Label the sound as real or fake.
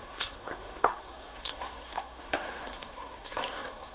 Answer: fake